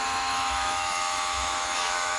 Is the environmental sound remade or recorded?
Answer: remade